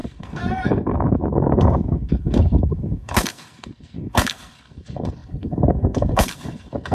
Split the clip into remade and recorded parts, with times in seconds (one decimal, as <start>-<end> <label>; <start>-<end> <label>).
0.0-6.9 remade